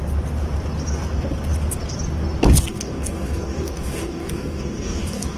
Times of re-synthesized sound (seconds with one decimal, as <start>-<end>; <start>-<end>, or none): 2.7-5.4